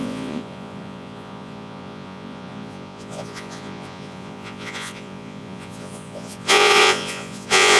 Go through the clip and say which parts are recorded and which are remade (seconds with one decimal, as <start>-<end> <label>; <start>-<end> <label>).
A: 0.0-7.8 remade